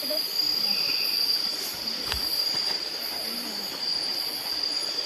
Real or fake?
real